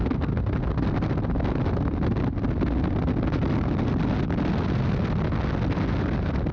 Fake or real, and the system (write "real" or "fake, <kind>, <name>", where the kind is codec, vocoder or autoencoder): real